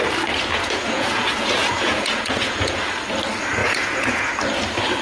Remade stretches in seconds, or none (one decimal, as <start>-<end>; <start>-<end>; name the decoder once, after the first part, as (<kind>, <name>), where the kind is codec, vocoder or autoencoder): 0.5-2.8 (vocoder, Vocos); 3.6-4.3